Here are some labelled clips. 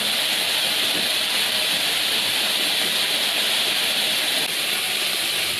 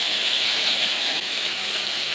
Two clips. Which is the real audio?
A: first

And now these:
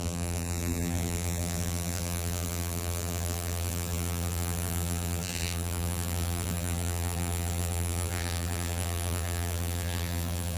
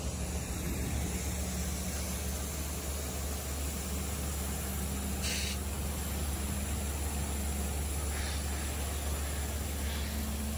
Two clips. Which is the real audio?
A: second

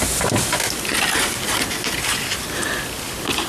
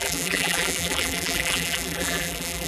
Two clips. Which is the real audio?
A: first